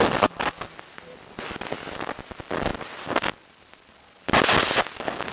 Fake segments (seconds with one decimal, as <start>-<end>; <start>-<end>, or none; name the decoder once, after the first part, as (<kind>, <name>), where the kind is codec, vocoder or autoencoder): none